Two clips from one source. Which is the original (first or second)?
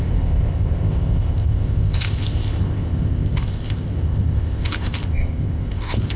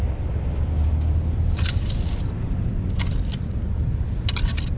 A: second